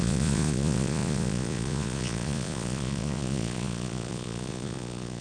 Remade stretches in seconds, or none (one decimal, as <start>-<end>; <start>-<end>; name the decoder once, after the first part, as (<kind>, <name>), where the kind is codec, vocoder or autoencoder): 0.0-5.2 (vocoder, Vocos)